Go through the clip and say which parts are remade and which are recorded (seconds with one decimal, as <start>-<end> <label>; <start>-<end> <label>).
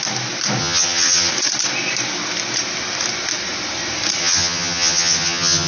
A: 0.0-0.6 recorded; 0.6-1.3 remade; 1.3-4.2 recorded; 4.2-5.7 remade